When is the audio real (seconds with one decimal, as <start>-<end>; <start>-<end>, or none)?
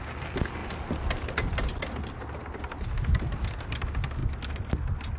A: 0.0-5.2